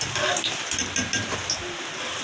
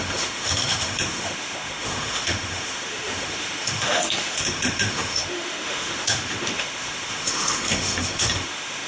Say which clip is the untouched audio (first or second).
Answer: first